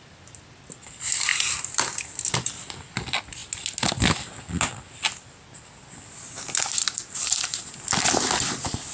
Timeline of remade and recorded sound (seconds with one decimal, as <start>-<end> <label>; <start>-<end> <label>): 0.0-8.9 recorded